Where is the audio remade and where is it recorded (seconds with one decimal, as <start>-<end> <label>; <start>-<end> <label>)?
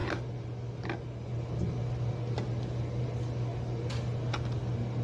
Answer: 0.0-5.0 recorded